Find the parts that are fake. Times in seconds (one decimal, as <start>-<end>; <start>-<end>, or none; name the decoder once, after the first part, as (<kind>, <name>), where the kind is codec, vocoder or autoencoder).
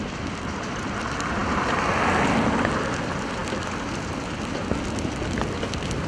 none